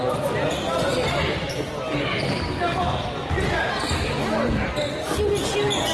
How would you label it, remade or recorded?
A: recorded